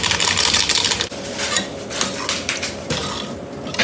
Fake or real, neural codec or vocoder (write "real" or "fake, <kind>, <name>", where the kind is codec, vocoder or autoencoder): real